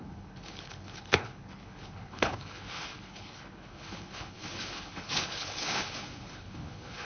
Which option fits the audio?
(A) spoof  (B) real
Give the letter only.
A